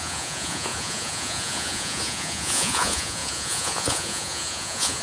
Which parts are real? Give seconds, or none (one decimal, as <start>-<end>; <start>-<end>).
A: none